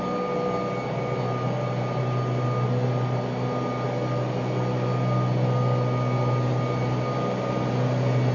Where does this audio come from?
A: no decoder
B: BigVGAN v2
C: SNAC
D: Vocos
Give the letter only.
A